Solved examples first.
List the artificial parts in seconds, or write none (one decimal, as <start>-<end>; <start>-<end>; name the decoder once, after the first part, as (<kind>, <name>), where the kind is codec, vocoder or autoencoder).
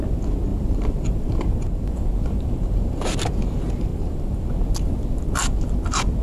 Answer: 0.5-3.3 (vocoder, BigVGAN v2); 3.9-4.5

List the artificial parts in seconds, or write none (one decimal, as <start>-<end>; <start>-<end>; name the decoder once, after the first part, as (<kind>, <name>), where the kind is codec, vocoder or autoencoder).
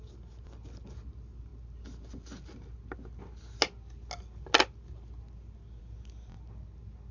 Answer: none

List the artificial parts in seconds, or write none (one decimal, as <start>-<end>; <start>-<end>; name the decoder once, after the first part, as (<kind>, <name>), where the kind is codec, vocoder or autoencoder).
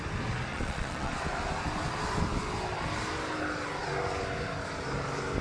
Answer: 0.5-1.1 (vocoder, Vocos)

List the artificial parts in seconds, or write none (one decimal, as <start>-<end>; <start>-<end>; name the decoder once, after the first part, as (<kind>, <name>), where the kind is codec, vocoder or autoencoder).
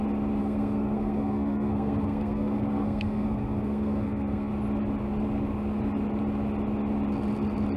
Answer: 0.4-4.5 (codec, SNAC)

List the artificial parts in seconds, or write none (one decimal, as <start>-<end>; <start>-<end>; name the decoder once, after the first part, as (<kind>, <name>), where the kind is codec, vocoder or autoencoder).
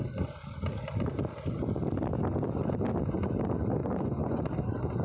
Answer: 3.8-4.4 (vocoder, Vocos)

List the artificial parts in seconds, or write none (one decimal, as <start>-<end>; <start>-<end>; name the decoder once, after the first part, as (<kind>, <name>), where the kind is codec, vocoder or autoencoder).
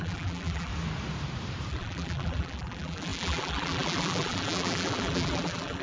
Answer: 0.0-0.7 (vocoder, BigVGAN v2); 1.7-5.8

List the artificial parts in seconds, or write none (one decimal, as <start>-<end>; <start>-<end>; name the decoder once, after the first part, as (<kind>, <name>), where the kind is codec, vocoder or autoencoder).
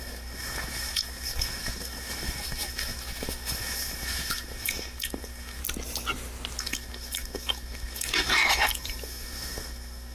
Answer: 0.0-5.6 (autoencoder, DAC-VAE); 6.6-10.1